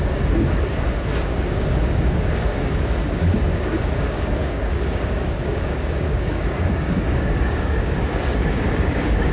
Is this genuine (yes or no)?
no